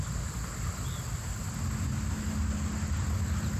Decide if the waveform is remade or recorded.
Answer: recorded